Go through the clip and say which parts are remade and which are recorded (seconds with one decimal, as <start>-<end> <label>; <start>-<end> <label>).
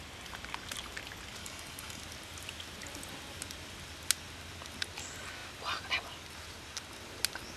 0.0-1.4 recorded; 1.4-2.0 remade; 2.0-7.6 recorded